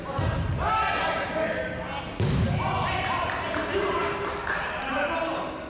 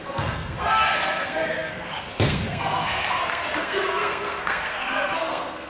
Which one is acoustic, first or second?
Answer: first